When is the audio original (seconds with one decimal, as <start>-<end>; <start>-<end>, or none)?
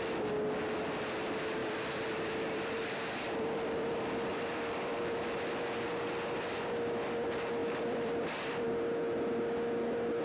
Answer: 0.0-1.6; 6.1-7.6; 8.7-10.2